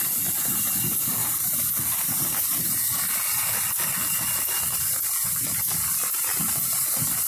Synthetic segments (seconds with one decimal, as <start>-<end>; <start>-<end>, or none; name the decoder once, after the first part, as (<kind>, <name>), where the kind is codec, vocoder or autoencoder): 6.3-6.8 (vocoder, BigVGAN v2)